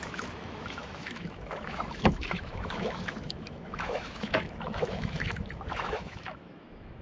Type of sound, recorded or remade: remade